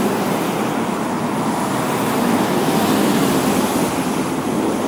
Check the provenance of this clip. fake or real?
real